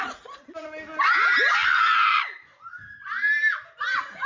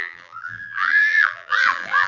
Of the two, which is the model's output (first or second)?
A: second